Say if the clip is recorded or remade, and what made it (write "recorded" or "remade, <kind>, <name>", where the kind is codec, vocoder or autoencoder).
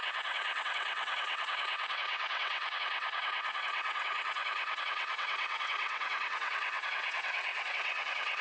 remade, vocoder, WaveNeXt